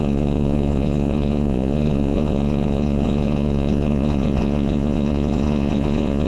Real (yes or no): no